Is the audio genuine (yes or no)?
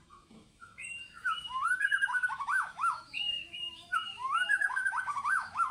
no